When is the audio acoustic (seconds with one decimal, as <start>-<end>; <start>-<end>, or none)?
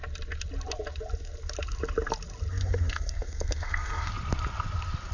0.0-2.5; 4.1-5.1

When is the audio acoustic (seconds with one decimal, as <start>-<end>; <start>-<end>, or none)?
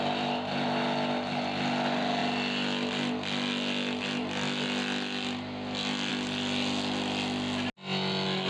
0.0-8.5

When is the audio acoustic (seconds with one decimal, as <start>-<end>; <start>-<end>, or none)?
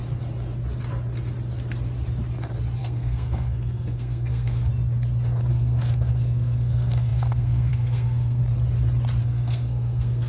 0.0-2.8; 4.7-5.5; 8.4-9.2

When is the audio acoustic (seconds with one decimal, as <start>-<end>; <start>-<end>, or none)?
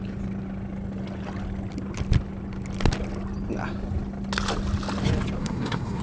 0.0-5.4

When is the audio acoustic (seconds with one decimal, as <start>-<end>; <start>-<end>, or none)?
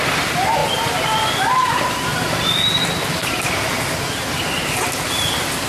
0.0-5.7